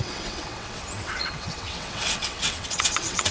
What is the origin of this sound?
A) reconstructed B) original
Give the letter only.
A